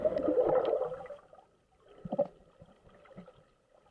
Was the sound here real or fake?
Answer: real